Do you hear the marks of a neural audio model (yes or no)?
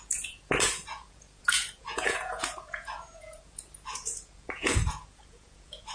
yes